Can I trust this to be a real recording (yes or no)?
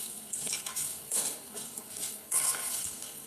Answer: no